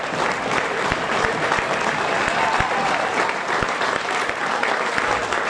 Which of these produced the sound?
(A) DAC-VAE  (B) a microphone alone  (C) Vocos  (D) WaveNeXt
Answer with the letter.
B